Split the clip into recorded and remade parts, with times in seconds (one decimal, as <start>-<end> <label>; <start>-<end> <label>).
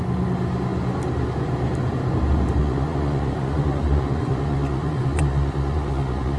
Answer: 0.0-2.6 recorded; 2.6-6.4 remade